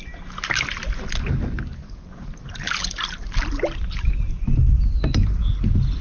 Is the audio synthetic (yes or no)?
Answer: no